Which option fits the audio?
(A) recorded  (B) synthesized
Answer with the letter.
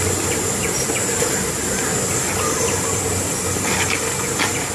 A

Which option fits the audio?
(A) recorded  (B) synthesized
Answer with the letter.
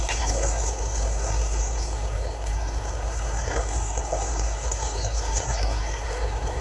B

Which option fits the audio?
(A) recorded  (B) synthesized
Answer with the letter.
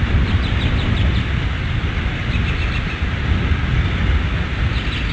A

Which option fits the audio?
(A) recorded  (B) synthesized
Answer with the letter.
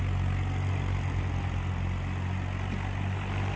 A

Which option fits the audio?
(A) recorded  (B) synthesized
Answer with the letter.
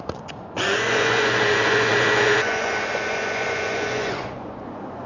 B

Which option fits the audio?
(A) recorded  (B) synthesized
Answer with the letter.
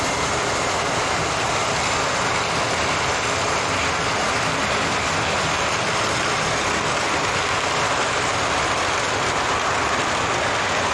A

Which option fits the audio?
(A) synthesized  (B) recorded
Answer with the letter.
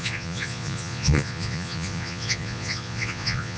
A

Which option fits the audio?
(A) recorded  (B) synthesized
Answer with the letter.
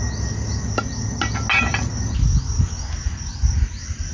A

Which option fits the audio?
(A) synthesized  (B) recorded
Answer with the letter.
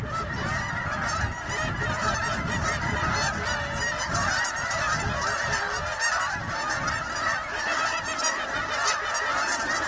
B